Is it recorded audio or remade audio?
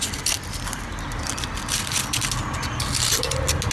recorded